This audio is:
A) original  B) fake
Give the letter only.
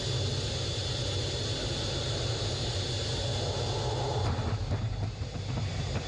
A